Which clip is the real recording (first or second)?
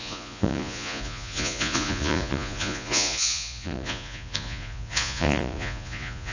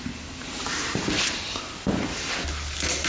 second